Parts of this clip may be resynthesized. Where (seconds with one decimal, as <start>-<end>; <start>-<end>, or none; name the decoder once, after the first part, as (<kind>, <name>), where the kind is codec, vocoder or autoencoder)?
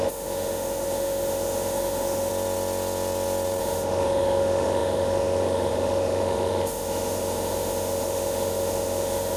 0.0-2.3 (autoencoder, DAC-VAE); 3.6-9.4